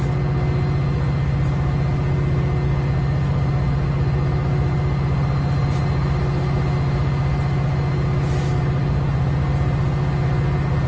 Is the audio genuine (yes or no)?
yes